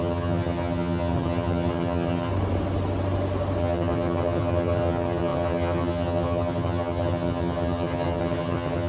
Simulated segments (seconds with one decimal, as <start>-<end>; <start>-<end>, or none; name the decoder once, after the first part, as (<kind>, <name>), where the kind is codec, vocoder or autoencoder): 0.0-2.3 (vocoder, HiFi-GAN); 3.6-8.9